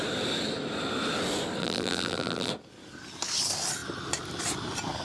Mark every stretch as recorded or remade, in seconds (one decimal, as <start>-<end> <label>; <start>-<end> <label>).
0.0-1.6 recorded; 1.6-2.5 remade; 2.5-5.0 recorded

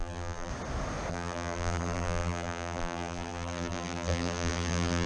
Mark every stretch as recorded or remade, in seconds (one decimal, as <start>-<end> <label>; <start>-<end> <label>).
0.0-0.5 remade; 0.5-1.1 recorded; 1.1-5.1 remade

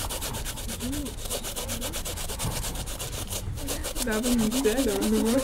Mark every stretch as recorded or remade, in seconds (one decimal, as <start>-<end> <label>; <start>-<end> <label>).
0.0-1.0 remade; 1.0-2.3 recorded; 2.3-3.8 remade; 3.8-4.8 recorded; 4.8-5.4 remade

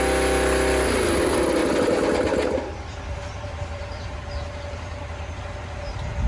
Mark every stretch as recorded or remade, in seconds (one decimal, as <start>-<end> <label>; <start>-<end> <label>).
0.0-1.6 recorded; 1.6-5.4 remade; 5.4-6.3 recorded

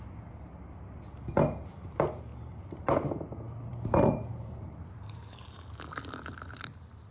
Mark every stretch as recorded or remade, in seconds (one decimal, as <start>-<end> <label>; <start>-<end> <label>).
0.0-2.3 recorded; 2.3-3.2 remade; 3.2-3.7 recorded; 3.7-5.2 remade; 5.2-7.1 recorded

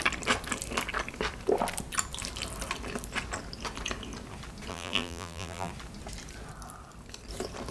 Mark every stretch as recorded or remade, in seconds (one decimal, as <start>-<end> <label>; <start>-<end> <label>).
0.0-4.7 recorded; 4.7-5.7 remade; 5.7-7.7 recorded